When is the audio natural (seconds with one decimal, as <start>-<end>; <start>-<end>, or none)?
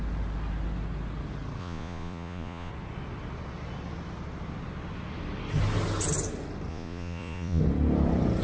0.0-1.6; 2.7-6.7; 7.6-8.4